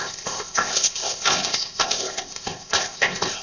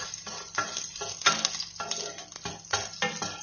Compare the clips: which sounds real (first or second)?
second